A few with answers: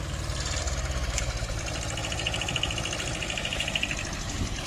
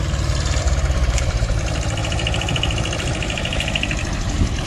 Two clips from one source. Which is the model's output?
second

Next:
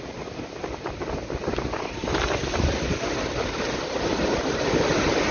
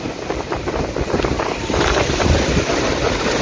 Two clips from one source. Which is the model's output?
second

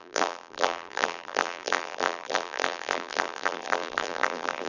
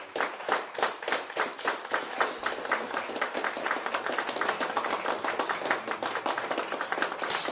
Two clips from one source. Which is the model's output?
first